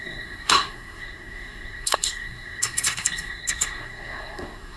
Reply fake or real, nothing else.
fake